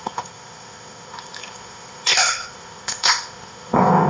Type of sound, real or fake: fake